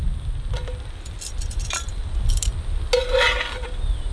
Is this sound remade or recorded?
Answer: recorded